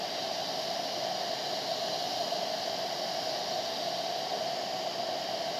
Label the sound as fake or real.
real